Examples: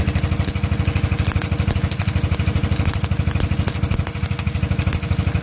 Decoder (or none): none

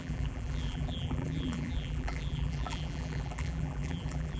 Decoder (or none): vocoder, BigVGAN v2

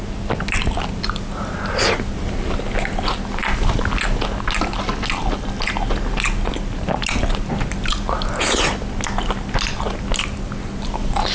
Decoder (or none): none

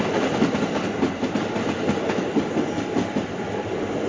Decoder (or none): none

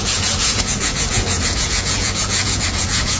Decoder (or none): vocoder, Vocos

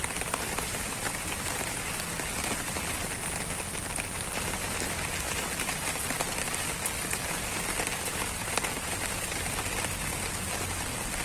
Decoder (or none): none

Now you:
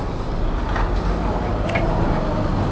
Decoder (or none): none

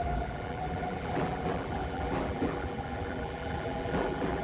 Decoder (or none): vocoder, BigVGAN v2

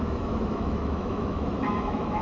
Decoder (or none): autoencoder, DAC-VAE